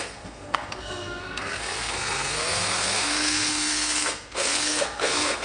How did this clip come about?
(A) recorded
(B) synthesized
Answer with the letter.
B